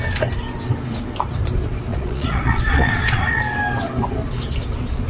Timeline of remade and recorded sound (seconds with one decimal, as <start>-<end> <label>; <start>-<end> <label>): 0.0-1.9 recorded; 1.9-3.4 remade; 3.4-5.1 recorded